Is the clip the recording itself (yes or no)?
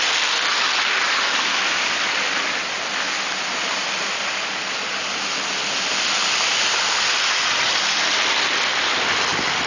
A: yes